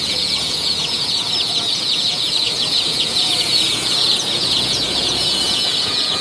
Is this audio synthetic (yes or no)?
yes